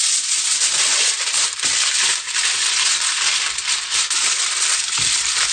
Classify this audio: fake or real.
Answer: real